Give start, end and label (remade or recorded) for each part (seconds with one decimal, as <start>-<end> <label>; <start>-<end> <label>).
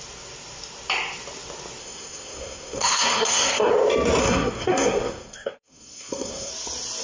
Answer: 0.0-1.8 recorded; 1.8-3.7 remade; 3.7-4.2 recorded; 4.2-6.5 remade; 6.5-7.0 recorded